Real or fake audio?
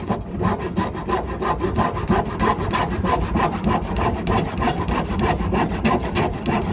real